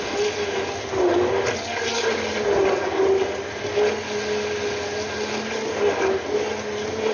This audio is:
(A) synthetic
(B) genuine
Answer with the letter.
B